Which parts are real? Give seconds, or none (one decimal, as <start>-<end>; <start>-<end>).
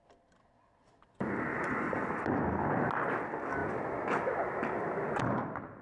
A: 0.0-1.5; 2.1-5.8